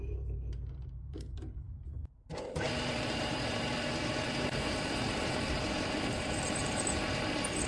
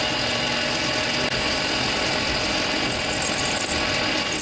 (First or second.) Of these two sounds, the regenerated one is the first